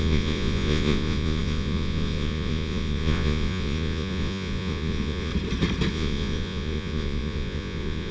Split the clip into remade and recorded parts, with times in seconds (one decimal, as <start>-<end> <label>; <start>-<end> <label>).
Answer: 0.0-5.3 remade; 5.3-5.9 recorded; 5.9-8.1 remade